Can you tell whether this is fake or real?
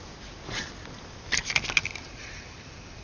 real